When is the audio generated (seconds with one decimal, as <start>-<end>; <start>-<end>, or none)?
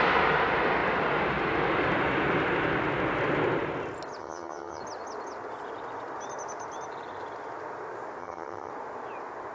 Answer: 4.2-4.8; 8.2-8.7